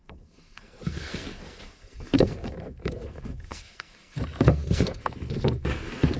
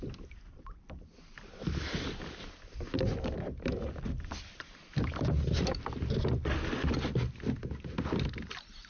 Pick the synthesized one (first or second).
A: first